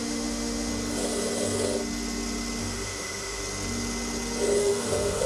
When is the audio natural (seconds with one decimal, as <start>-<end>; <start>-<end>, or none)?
0.7-2.6; 3.4-4.6